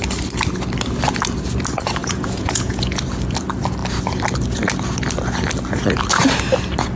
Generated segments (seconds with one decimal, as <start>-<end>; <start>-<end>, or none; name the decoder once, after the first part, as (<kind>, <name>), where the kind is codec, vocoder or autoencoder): 2.0-3.0 (vocoder, Vocos)